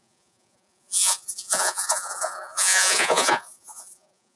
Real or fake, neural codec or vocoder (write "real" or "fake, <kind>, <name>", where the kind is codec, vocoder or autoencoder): fake, vocoder, Vocos